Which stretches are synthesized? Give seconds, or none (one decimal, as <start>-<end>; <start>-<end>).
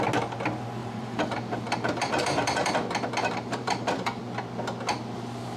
0.8-2.7; 3.2-4.2